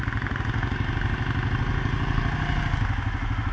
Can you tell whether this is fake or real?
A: real